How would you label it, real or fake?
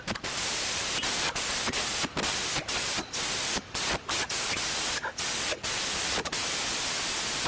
real